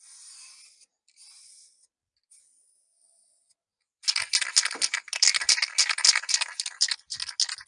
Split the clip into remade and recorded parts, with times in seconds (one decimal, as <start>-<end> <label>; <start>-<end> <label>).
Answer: 0.0-7.7 recorded